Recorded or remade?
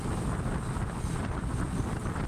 recorded